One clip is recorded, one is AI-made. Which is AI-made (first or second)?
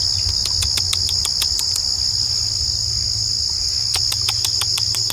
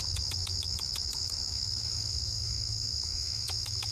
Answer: second